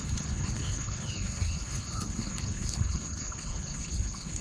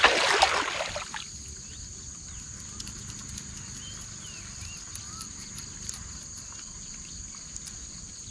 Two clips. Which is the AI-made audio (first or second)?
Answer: first